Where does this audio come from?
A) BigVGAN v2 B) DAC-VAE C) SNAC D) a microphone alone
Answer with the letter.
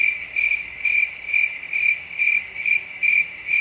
D